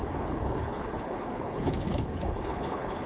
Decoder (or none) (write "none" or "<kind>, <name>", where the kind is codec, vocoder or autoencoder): codec, HILCodec